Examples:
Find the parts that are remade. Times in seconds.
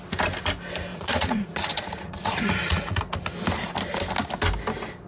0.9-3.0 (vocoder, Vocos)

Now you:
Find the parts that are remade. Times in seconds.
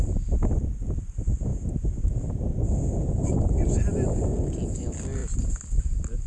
1.5-2.6 (vocoder, BigVGAN v2); 5.2-5.8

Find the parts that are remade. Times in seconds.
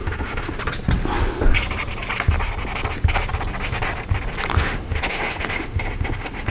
0.0-0.6 (autoencoder, DAC-VAE); 4.5-6.5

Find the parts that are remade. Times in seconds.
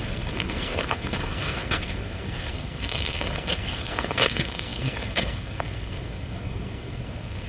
0.0-7.5 (codec, SNAC)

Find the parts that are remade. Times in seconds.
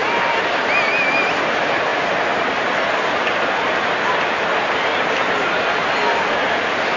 none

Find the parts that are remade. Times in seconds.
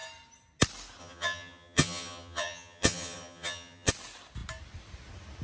1.0-3.9 (vocoder, HiFi-GAN)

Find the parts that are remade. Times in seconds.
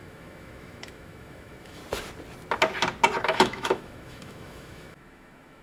0.0-1.8 (autoencoder, DAC-VAE); 3.2-5.6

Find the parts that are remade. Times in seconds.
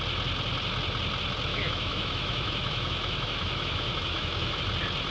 1.5-4.6 (autoencoder, DAC-VAE)